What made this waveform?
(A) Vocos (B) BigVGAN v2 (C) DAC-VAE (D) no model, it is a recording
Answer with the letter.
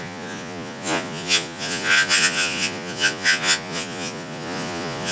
A